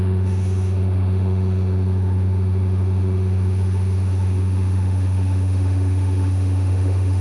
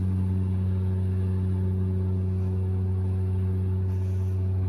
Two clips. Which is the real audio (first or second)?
second